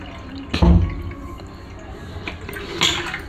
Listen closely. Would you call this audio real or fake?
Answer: real